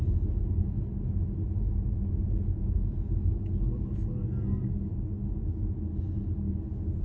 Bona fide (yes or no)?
yes